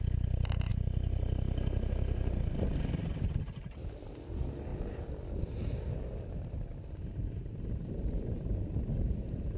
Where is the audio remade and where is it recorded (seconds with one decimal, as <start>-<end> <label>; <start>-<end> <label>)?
0.0-0.7 remade; 0.7-2.9 recorded; 2.9-4.7 remade; 4.7-7.7 recorded; 7.7-9.6 remade